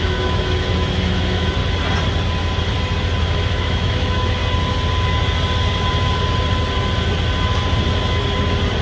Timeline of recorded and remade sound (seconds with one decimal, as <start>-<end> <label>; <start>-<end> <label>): 0.0-1.6 remade; 1.6-3.2 recorded; 3.2-4.4 remade; 4.4-8.8 recorded